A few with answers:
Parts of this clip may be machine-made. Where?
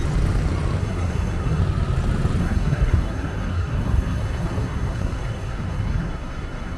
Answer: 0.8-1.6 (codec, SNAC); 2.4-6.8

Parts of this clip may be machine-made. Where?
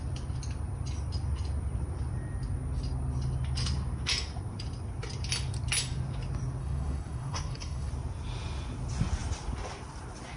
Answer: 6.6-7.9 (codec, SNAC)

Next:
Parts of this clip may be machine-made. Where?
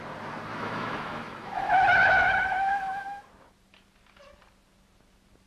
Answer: 0.5-3.3 (autoencoder, DAC-VAE)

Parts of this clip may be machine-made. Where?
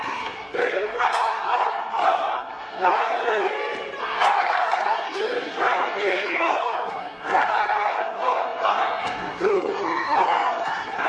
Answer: 0.0-3.5 (codec, SNAC); 4.0-11.1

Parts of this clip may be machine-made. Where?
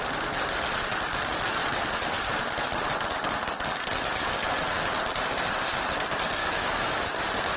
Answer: 6.4-7.0 (autoencoder, DAC-VAE)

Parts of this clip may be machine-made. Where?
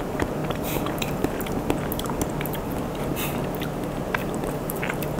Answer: 0.4-1.3 (vocoder, BigVGAN v2); 4.2-4.8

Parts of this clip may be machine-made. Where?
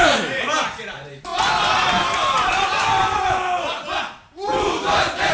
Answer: 0.0-1.3 (vocoder, BigVGAN v2); 4.0-5.3